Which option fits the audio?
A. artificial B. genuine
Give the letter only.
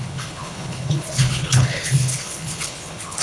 A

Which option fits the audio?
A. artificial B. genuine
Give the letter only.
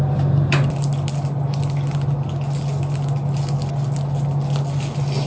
B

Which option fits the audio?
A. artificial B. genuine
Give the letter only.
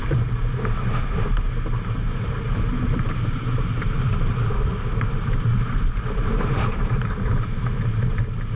A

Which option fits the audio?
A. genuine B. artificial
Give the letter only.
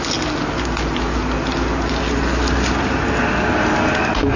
A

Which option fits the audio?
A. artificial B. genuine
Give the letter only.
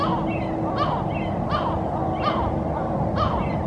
B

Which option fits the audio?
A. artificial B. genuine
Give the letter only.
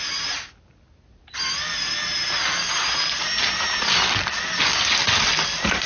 B